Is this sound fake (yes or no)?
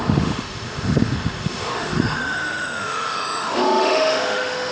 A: yes